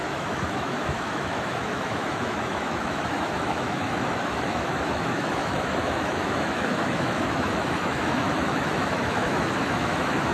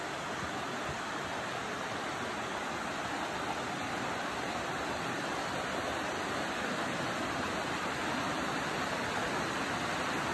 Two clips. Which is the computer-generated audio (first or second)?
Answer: first